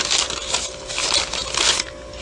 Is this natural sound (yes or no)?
yes